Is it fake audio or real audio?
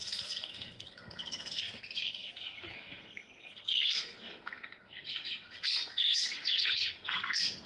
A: fake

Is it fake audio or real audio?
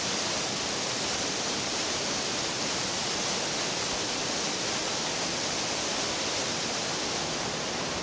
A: real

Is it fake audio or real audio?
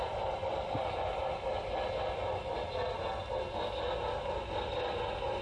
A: real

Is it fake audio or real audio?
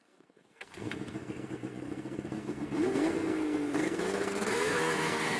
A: fake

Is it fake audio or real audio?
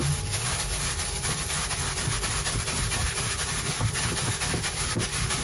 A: fake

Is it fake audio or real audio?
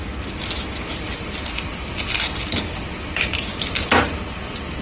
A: real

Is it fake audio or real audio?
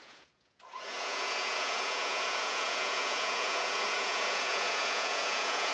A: fake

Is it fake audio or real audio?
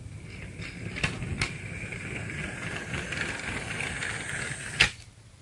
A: real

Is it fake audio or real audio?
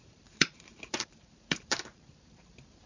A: fake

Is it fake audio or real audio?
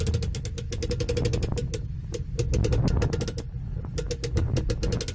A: real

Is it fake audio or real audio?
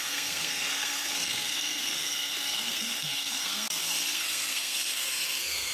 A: fake